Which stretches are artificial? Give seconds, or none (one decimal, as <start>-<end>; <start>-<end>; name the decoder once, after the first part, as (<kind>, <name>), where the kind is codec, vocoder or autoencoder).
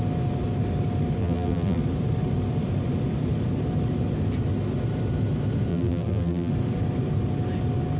1.2-1.8 (vocoder, BigVGAN v2); 5.7-6.5